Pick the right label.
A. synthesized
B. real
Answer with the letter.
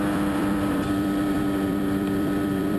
A